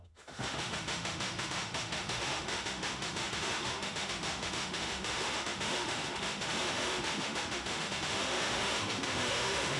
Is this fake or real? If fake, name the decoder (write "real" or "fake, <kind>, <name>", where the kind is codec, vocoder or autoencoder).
fake, autoencoder, DAC-VAE